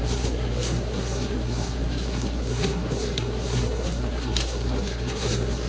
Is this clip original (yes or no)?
no